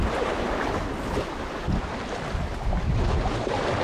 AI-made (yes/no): no